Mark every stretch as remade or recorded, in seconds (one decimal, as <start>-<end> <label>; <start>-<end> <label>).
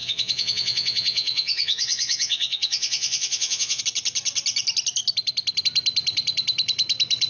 0.0-3.8 remade; 3.8-7.3 recorded